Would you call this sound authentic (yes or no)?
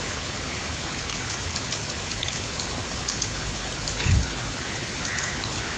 no